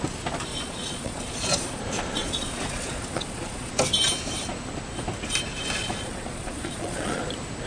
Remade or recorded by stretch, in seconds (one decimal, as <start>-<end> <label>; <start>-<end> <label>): 0.0-0.5 recorded; 0.5-1.8 remade; 1.8-2.2 recorded; 2.2-3.7 remade; 3.7-5.8 recorded; 5.8-7.2 remade; 7.2-7.7 recorded